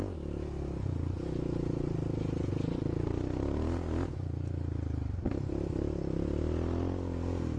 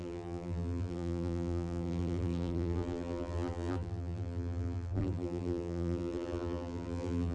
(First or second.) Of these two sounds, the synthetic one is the second